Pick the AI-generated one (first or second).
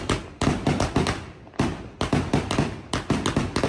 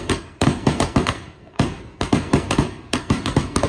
second